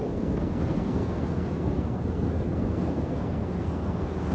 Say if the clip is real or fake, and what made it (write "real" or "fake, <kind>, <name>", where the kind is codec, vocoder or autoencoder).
fake, codec, SNAC